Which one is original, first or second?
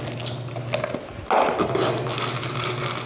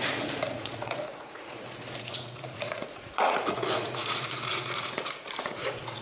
first